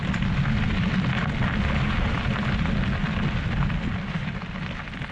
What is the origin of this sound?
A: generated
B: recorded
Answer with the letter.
B